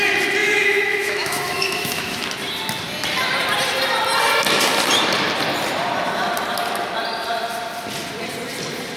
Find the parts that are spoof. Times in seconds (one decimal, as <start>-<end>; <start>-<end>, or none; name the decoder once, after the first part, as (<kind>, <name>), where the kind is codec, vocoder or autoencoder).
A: 0.4-2.2 (autoencoder, DAC-VAE)

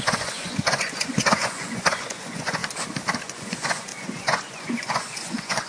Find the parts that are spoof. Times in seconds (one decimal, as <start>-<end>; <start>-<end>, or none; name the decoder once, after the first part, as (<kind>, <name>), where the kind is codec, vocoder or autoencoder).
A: 0.0-2.6 (vocoder, Vocos); 3.2-5.7

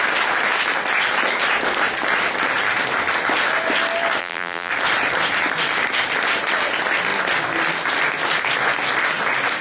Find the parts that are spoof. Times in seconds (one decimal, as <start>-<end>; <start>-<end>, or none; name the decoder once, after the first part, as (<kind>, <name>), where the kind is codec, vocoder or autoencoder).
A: 4.2-4.7 (vocoder, BigVGAN v2)

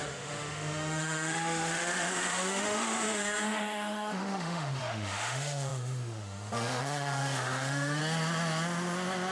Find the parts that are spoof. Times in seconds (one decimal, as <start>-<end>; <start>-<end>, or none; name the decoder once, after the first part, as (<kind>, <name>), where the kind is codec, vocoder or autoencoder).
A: 0.0-8.0 (autoencoder, DAC-VAE)

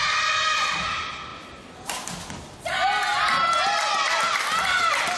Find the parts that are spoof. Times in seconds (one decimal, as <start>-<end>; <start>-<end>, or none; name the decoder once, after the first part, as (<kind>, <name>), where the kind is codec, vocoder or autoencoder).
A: none